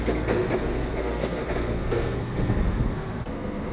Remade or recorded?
remade